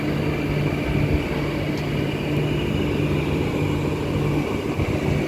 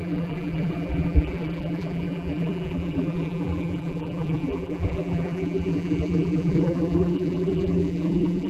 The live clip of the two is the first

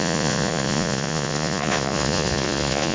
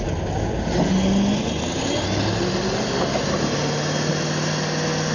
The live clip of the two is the second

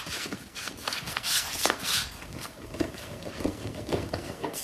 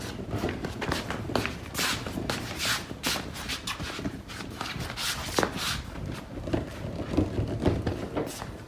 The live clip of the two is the second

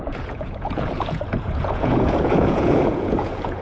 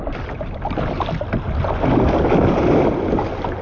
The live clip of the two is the second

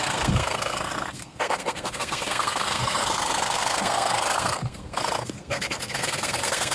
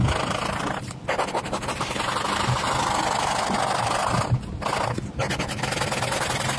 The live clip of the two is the second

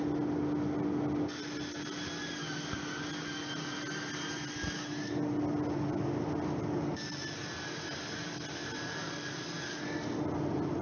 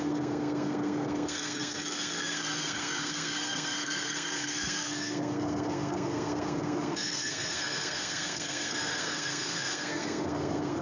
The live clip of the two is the first